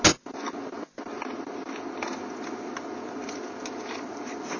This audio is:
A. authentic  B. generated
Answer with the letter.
A